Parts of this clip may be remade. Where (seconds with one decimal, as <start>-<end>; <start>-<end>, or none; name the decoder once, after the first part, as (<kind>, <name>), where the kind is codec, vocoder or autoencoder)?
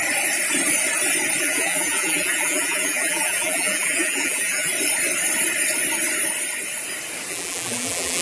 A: 1.4-4.7 (vocoder, BigVGAN v2); 7.3-8.2